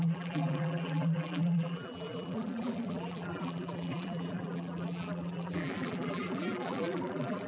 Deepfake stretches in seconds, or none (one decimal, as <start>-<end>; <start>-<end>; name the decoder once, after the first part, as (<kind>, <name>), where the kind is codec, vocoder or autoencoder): 0.0-7.5 (vocoder, BigVGAN v2)